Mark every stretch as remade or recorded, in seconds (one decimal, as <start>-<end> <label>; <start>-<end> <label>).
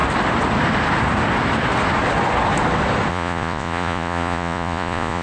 0.0-3.1 recorded; 3.1-5.2 remade